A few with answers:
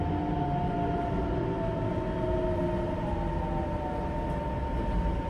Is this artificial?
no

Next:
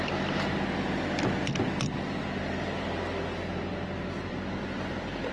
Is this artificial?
no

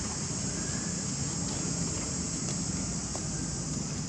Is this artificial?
no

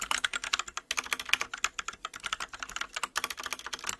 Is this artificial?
no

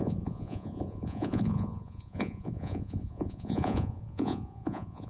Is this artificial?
yes